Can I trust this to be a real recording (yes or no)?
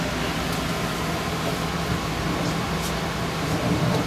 yes